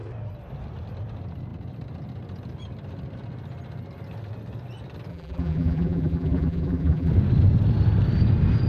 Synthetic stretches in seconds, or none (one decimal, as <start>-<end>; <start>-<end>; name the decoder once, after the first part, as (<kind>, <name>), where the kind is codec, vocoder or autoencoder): 5.1-7.1 (vocoder, BigVGAN v2)